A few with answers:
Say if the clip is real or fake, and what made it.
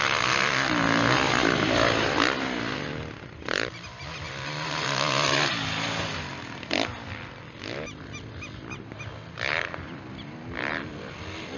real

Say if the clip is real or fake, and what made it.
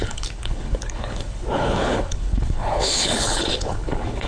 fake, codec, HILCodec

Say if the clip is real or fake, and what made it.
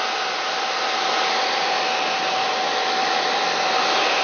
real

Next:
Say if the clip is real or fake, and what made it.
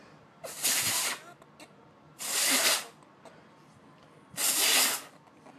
real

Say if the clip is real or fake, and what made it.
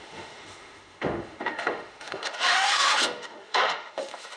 fake, autoencoder, DAC-VAE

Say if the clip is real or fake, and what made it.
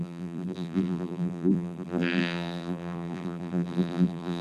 fake, vocoder, BigVGAN v2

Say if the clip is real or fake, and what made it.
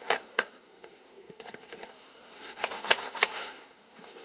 fake, codec, SNAC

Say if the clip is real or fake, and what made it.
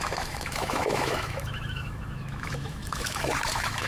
fake, autoencoder, DAC-VAE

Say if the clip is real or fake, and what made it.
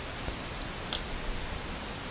real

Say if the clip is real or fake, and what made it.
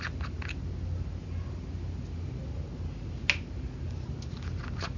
real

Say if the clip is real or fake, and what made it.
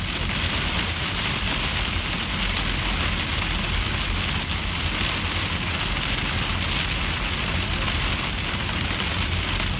real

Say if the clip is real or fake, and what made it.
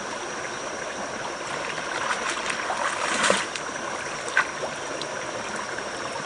real